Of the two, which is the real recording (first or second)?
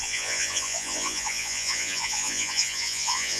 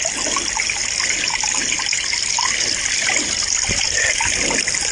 second